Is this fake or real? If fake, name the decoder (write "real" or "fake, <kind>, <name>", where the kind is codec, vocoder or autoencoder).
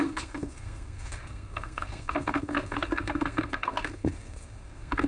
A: fake, codec, SNAC